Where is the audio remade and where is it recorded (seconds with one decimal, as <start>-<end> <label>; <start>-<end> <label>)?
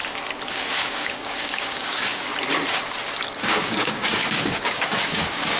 0.0-0.5 recorded; 0.5-2.3 remade; 2.3-3.4 recorded; 3.4-5.6 remade